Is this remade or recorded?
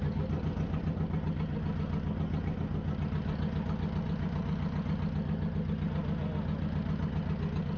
recorded